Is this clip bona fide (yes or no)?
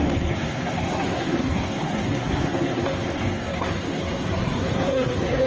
no